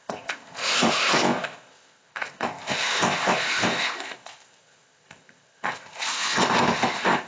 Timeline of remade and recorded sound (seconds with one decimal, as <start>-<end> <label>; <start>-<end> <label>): 0.0-7.3 remade